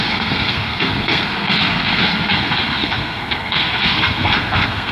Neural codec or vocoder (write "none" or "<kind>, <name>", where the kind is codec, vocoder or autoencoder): codec, SNAC